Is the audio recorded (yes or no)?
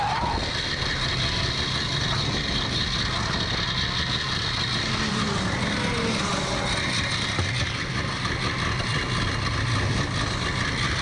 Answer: yes